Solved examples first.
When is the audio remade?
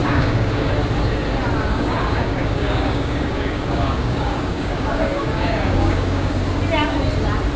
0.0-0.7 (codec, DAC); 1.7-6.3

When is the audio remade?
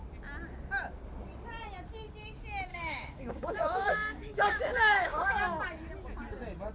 2.7-5.6 (codec, DAC)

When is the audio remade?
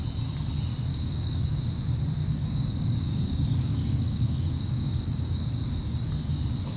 0.9-1.6 (codec, DAC); 2.2-6.1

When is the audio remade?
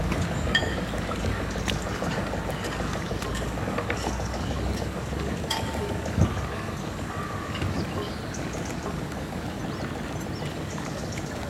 0.0-9.6 (codec, DAC); 10.5-11.5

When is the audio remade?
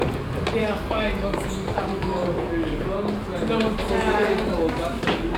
0.6-1.5 (codec, DAC); 1.9-2.8; 3.8-5.4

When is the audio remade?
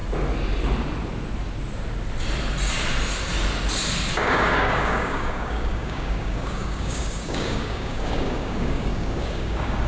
4.1-9.9 (codec, DAC)